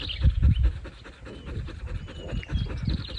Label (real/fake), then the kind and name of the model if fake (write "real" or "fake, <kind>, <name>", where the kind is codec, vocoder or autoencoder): real